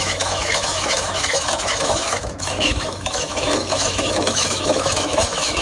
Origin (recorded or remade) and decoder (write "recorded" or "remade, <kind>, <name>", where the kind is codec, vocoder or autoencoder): remade, autoencoder, DAC-VAE